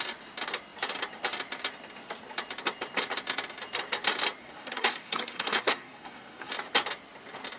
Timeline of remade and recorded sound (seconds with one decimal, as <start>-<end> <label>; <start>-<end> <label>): 0.0-4.4 recorded; 4.4-6.5 remade; 6.5-7.6 recorded